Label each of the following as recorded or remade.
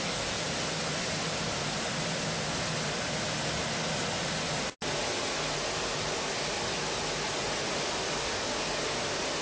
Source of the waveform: recorded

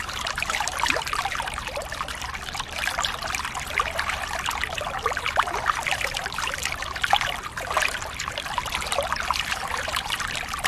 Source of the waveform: remade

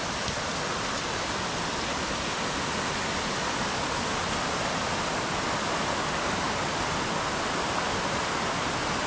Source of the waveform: recorded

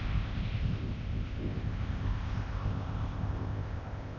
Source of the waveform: remade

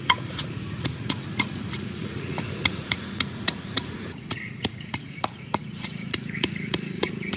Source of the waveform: remade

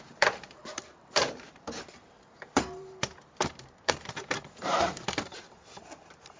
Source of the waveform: remade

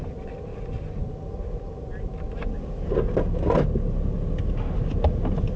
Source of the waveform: recorded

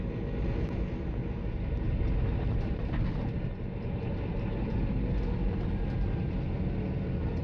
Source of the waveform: recorded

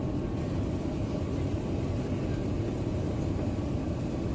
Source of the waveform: recorded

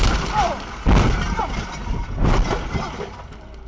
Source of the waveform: recorded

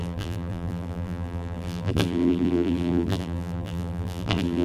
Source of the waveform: remade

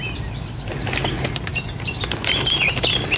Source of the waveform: remade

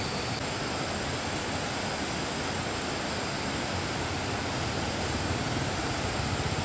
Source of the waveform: recorded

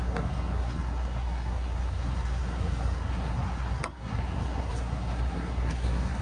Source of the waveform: remade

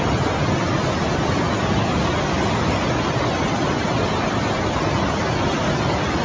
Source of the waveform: recorded